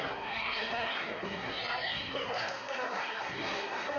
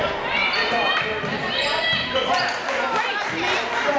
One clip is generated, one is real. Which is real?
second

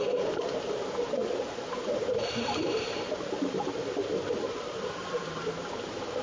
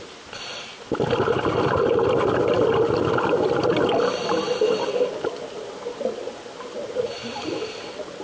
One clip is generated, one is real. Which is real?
second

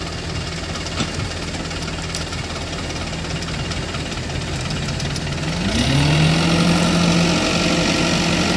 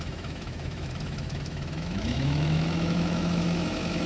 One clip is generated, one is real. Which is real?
first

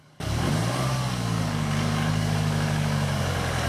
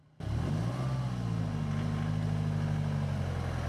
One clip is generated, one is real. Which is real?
second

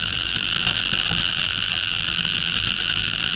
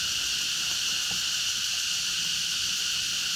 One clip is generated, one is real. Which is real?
second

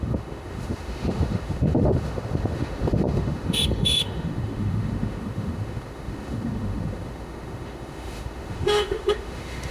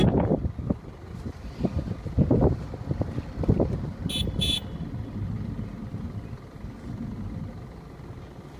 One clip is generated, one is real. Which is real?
second